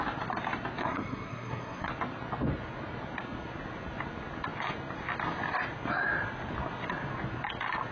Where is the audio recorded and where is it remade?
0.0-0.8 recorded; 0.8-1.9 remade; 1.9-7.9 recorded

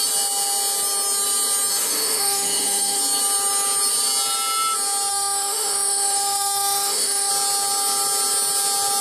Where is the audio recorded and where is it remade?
0.0-1.7 recorded; 1.7-3.0 remade; 3.0-5.1 recorded; 5.1-7.3 remade; 7.3-9.0 recorded

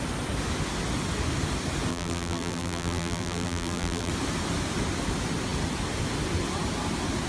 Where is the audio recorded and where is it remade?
0.0-1.9 recorded; 1.9-4.1 remade; 4.1-7.3 recorded

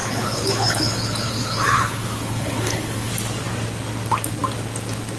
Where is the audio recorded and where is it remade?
0.0-3.1 remade; 3.1-5.2 recorded

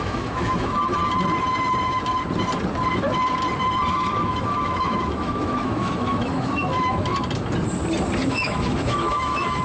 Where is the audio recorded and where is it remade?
0.0-1.0 remade; 1.0-3.9 recorded; 3.9-7.1 remade; 7.1-8.3 recorded; 8.3-9.6 remade

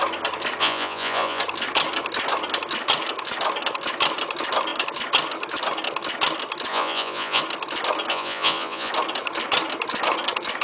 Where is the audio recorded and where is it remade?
0.0-0.6 recorded; 0.6-1.4 remade; 1.4-6.7 recorded; 6.7-7.4 remade; 7.4-8.1 recorded; 8.1-8.9 remade; 8.9-10.6 recorded